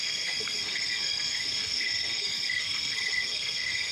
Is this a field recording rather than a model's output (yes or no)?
no